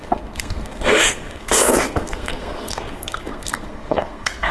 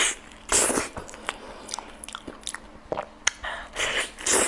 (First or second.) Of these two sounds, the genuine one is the second